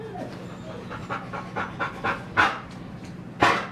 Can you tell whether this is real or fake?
real